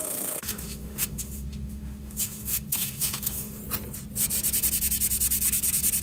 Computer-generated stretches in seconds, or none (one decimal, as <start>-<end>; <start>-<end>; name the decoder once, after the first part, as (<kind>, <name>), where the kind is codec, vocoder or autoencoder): 0.0-3.6 (autoencoder, DAC-VAE)